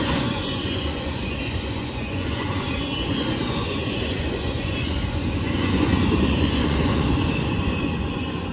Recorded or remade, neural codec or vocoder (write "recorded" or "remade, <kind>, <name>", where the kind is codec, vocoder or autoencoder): remade, vocoder, Vocos